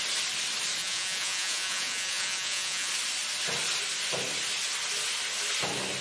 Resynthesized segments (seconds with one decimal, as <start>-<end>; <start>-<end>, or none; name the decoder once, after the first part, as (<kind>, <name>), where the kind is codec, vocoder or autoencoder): 0.8-2.9 (vocoder, Vocos)